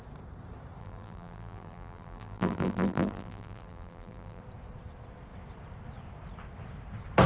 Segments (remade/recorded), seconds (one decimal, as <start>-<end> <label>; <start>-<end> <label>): 0.0-0.8 recorded; 0.8-4.4 remade; 4.4-7.3 recorded